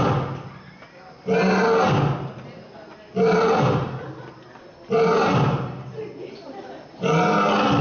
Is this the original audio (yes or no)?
yes